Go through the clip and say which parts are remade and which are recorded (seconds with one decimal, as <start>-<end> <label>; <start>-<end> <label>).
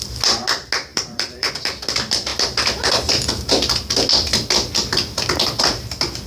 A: 0.0-0.9 recorded; 0.9-1.5 remade; 1.5-6.3 recorded